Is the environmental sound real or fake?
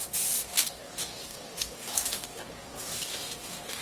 fake